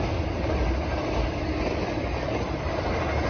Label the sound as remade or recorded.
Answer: recorded